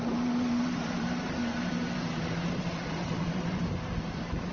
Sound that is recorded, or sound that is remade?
remade